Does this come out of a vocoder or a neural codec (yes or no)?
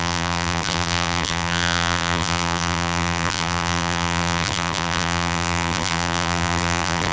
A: yes